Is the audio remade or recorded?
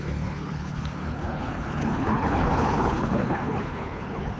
remade